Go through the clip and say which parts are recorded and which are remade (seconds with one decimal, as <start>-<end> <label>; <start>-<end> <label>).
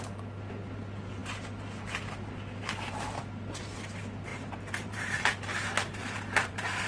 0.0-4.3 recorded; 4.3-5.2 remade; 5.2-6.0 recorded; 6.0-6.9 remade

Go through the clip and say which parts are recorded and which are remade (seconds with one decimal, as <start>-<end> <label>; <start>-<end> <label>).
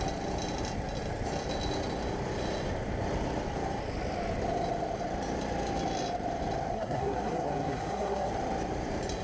0.0-6.7 recorded; 6.7-8.3 remade; 8.3-9.2 recorded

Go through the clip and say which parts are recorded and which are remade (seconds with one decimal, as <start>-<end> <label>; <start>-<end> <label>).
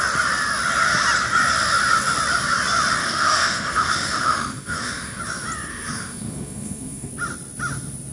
0.0-3.0 recorded; 3.0-5.2 remade; 5.2-5.7 recorded; 5.7-7.1 remade; 7.1-8.1 recorded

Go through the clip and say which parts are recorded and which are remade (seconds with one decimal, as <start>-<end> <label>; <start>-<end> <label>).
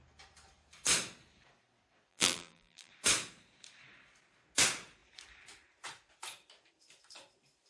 0.0-2.1 recorded; 2.1-2.9 remade; 2.9-7.7 recorded